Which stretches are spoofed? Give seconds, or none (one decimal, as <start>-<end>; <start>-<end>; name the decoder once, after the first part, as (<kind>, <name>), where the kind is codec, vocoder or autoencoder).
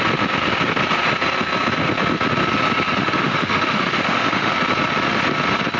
3.0-4.5 (autoencoder, DAC-VAE)